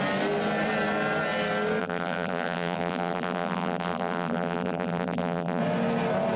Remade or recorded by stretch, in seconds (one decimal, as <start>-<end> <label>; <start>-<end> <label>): 0.0-1.8 recorded; 1.8-5.6 remade; 5.6-6.4 recorded